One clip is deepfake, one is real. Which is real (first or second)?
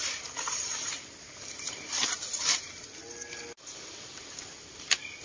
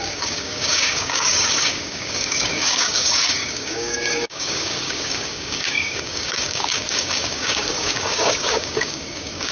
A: first